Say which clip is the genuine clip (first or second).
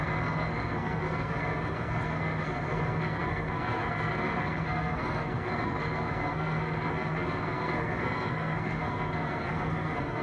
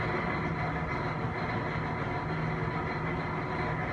second